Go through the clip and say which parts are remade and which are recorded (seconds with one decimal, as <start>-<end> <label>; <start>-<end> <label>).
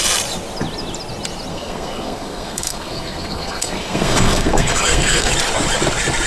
0.0-1.5 recorded; 1.5-5.3 remade; 5.3-6.3 recorded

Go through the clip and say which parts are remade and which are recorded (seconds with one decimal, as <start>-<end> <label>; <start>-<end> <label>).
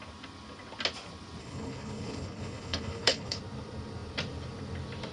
0.0-1.4 recorded; 1.4-3.4 remade; 3.4-5.1 recorded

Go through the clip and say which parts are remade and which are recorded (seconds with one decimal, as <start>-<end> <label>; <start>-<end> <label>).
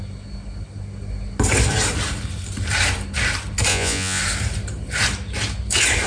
0.0-3.7 recorded; 3.7-4.2 remade; 4.2-6.1 recorded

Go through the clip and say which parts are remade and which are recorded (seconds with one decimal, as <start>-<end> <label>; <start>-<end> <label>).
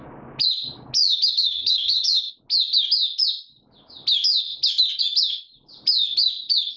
0.0-1.0 recorded; 1.0-2.3 remade; 2.3-6.8 recorded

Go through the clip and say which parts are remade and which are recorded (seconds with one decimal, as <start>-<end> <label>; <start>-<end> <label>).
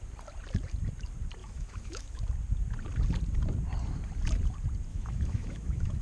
0.0-1.4 recorded; 1.4-2.2 remade; 2.2-4.9 recorded; 4.9-6.0 remade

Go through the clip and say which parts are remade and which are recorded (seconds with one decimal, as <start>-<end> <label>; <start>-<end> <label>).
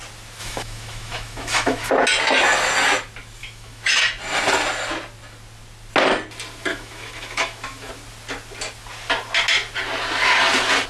0.0-0.4 recorded; 0.4-1.9 remade; 1.9-3.4 recorded; 3.4-4.0 remade; 4.0-6.7 recorded; 6.7-7.9 remade; 7.9-10.9 recorded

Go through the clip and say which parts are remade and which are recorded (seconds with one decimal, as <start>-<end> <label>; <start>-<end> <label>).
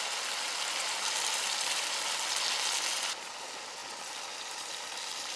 0.0-5.4 recorded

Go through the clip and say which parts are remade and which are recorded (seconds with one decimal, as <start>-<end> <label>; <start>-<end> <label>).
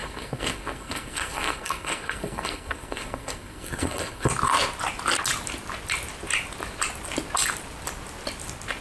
0.0-4.3 remade; 4.3-8.8 recorded